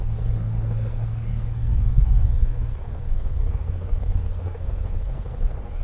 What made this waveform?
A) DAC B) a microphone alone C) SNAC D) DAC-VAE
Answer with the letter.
C